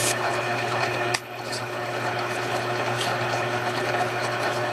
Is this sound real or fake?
fake